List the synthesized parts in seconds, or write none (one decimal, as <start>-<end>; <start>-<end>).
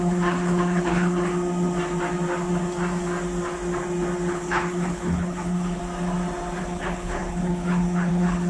0.0-1.3; 4.3-5.8; 6.6-8.5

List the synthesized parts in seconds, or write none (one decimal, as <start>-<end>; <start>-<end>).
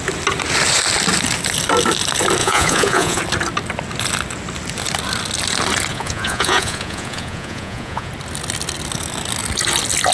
2.4-3.2; 5.9-8.1